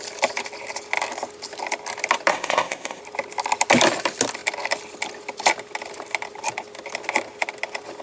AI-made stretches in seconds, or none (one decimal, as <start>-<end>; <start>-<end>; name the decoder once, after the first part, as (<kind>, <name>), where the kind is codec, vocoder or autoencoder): 2.3-3.0 (codec, ZipCodec)